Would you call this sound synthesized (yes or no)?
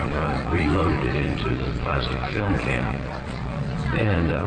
yes